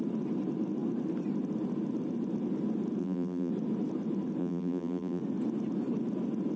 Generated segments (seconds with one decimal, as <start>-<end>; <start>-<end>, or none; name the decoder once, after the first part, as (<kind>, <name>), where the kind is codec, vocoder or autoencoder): 3.0-3.5 (vocoder, BigVGAN v2); 4.4-5.2